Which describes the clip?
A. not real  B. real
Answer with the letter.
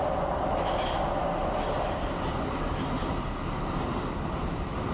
B